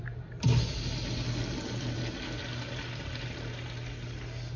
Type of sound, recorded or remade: recorded